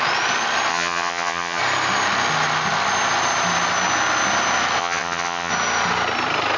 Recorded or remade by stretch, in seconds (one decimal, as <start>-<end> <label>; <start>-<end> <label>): 0.0-0.7 recorded; 0.7-1.6 remade; 1.6-4.8 recorded; 4.8-5.5 remade; 5.5-6.6 recorded